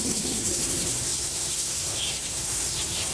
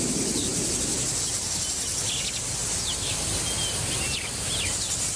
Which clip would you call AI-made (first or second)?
first